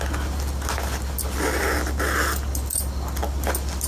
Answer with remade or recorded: recorded